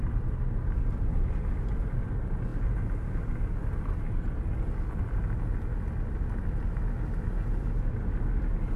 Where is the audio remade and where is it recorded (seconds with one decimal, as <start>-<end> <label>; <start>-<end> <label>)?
0.0-8.8 recorded